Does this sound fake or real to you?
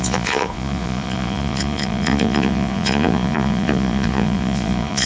fake